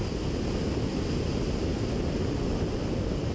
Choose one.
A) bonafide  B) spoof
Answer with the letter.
A